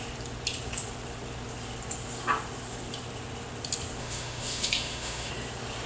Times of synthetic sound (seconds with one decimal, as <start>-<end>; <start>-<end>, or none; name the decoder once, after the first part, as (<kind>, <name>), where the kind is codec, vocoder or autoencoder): 4.0-5.3 (autoencoder, DAC-VAE)